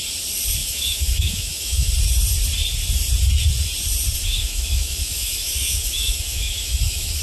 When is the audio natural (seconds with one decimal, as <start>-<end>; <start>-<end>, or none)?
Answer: 0.0-0.6; 1.9-4.2